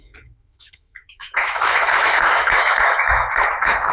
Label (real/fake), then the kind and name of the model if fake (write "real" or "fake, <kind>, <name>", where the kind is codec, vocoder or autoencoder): fake, autoencoder, DAC-VAE